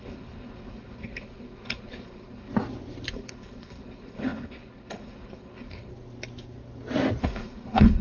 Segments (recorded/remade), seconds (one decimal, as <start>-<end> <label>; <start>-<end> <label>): 0.0-2.5 remade; 2.5-3.1 recorded; 3.1-5.9 remade; 5.9-7.2 recorded; 7.2-8.0 remade